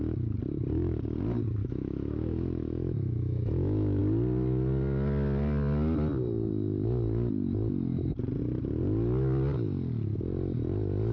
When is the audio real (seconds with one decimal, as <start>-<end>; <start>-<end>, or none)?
0.0-1.6; 4.0-11.1

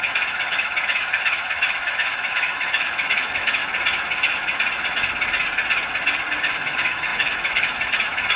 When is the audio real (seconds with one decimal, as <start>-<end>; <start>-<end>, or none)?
3.6-6.5

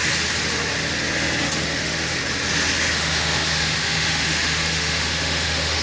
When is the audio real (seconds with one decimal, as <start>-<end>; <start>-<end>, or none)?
0.0-1.4; 2.2-2.9

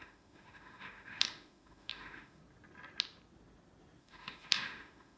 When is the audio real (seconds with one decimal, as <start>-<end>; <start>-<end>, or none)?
2.4-4.0

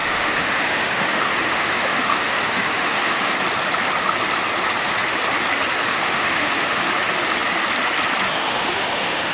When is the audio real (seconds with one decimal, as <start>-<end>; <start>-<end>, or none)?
3.3-5.9; 6.9-8.4